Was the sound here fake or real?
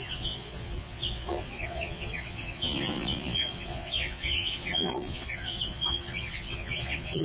fake